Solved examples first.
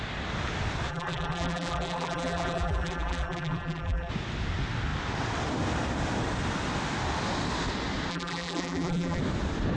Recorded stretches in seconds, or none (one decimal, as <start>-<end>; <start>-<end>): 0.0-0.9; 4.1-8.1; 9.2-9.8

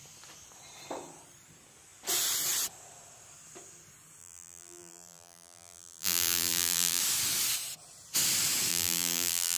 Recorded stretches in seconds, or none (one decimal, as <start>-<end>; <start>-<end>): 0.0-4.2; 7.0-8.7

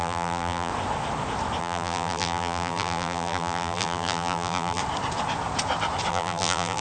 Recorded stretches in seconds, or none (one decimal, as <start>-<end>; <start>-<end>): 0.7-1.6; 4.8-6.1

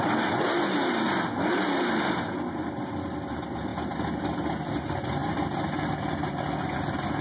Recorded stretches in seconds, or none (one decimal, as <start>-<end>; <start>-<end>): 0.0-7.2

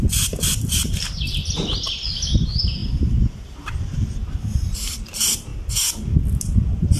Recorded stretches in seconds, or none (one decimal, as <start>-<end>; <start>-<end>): 5.5-7.0